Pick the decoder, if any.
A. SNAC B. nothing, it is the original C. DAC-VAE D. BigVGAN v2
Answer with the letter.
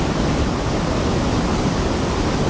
B